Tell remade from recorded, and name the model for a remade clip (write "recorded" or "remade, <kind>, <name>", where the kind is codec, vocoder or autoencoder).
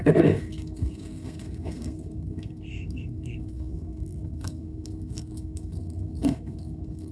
remade, codec, SNAC